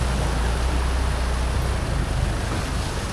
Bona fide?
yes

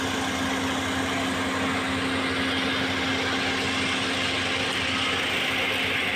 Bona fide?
yes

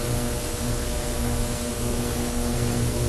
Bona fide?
no